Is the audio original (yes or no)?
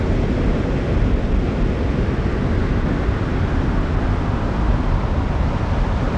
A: yes